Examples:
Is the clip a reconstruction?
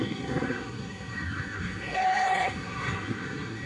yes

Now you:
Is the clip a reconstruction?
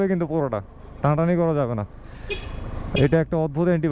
no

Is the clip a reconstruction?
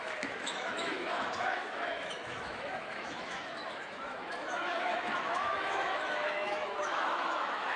yes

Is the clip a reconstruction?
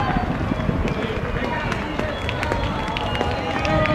no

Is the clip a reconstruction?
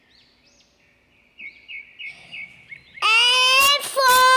no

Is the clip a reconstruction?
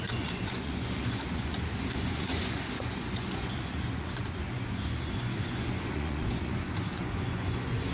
yes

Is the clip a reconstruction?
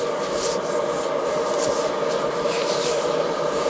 no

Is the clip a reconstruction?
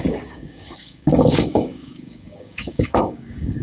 yes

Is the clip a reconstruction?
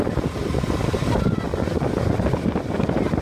no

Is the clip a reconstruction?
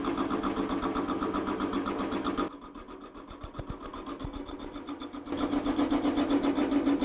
no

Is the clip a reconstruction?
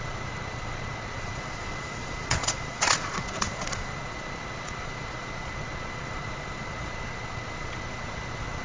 yes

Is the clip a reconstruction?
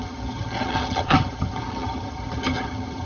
yes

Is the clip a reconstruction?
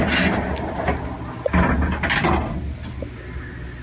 no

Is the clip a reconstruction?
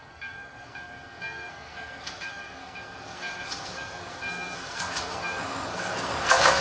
yes